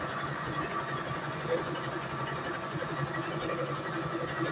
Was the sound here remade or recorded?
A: remade